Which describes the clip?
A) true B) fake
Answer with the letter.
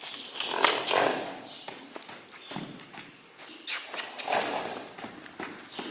A